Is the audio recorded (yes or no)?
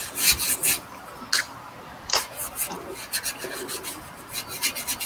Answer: yes